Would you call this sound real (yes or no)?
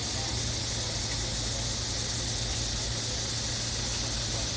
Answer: yes